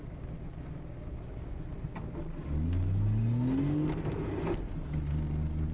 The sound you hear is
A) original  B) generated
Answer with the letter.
A